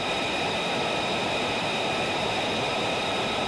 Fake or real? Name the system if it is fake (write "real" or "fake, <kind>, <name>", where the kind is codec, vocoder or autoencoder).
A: real